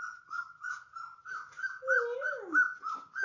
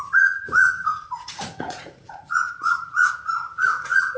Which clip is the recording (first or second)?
first